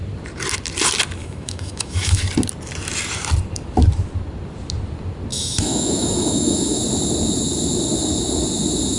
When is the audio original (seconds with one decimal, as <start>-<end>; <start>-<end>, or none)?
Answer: 0.0-1.2; 2.2-5.3; 6.8-9.0